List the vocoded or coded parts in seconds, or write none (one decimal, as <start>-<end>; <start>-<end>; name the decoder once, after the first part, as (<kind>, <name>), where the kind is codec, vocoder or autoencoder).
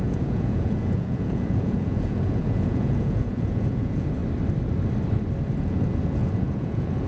0.0-4.2 (vocoder, Vocos); 5.6-7.1